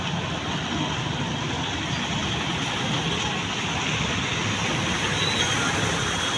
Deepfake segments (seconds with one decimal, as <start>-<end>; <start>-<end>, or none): none

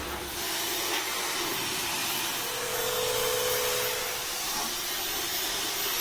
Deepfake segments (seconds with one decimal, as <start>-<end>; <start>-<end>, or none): none

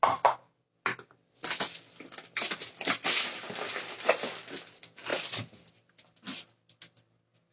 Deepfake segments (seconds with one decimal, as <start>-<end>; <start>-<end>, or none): none

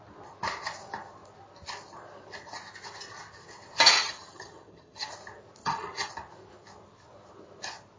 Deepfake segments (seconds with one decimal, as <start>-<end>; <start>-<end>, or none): 4.0-5.1; 5.6-6.1

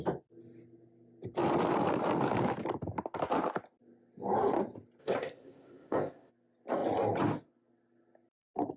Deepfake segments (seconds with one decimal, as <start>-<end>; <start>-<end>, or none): 5.0-6.3

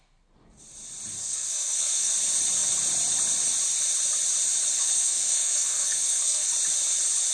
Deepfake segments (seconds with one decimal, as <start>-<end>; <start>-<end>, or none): 1.2-2.1; 4.8-6.5

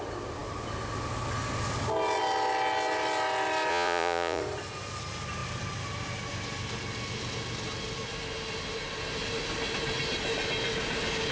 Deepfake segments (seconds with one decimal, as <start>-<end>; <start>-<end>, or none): 3.7-4.4

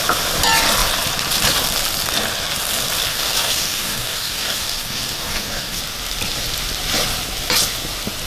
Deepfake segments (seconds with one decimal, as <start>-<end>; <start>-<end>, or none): 3.1-5.8